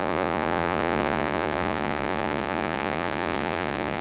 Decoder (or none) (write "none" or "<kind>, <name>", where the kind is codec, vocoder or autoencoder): vocoder, Vocos